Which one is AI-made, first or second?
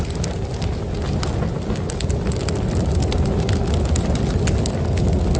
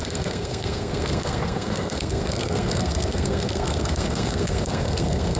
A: second